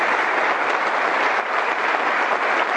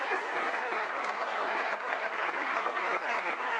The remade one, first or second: second